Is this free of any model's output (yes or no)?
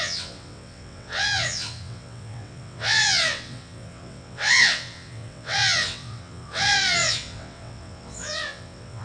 no